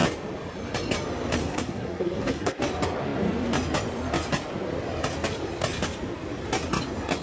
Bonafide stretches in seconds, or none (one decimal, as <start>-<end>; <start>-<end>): 0.0-1.4; 2.6-7.2